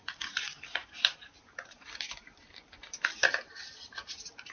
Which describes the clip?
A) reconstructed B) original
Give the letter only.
A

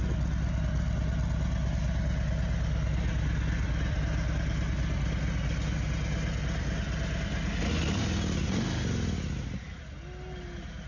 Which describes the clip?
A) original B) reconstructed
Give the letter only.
A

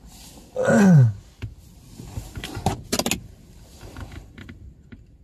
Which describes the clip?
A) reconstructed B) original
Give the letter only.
B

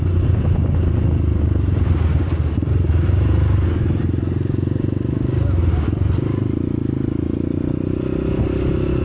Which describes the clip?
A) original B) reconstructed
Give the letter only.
A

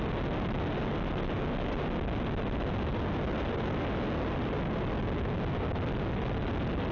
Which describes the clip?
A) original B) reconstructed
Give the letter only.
A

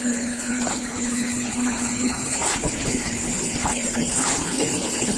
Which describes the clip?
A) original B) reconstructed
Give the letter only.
B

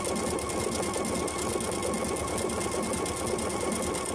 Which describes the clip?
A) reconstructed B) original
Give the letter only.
B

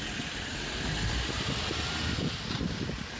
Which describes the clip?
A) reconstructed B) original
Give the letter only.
B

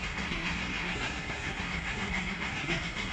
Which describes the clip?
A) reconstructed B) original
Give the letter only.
A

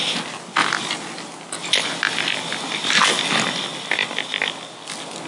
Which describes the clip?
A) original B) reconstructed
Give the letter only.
A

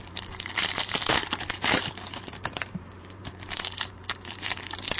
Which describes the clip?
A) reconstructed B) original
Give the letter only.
A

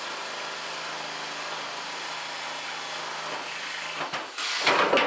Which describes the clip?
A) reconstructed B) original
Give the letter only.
B